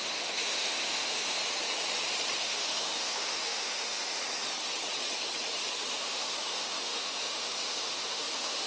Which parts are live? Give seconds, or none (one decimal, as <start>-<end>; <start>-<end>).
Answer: 1.4-2.4; 4.2-5.9